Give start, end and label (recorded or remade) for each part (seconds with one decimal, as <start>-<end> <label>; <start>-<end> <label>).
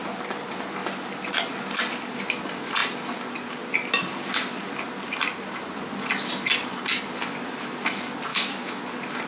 0.0-8.3 recorded; 8.3-8.8 remade; 8.8-9.3 recorded